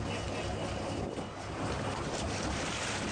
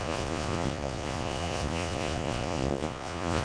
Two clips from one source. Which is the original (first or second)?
first